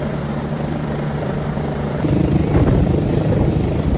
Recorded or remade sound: remade